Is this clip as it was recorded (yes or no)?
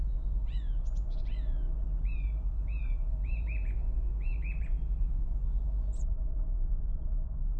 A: no